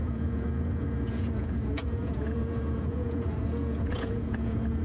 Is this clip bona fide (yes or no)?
no